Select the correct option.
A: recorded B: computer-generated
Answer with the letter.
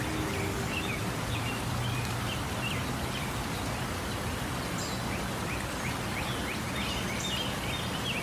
A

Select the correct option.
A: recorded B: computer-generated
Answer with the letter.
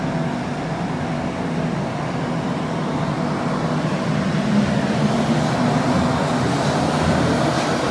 A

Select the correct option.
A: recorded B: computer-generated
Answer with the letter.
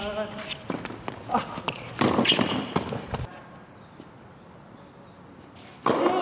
A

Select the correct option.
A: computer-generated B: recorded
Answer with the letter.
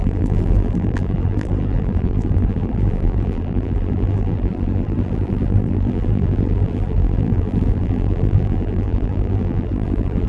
A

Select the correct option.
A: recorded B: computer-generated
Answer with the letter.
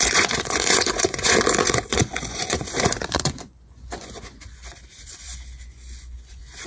B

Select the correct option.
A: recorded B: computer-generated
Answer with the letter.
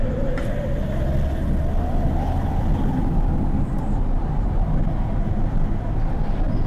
A